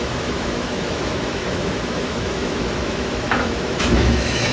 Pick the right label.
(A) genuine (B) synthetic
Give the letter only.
B